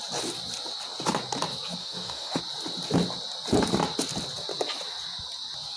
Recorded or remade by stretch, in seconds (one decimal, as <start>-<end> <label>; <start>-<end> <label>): 0.0-1.8 recorded; 1.8-2.4 remade; 2.4-5.8 recorded